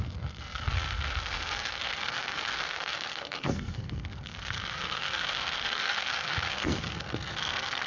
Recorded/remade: remade